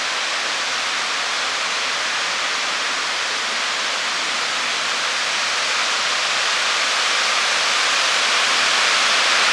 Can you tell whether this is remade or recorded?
recorded